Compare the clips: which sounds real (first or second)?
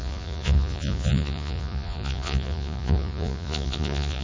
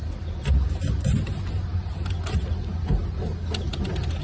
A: second